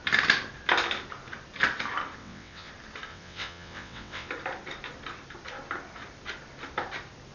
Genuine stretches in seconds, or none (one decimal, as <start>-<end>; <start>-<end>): 0.0-2.2; 2.7-3.1; 4.3-7.3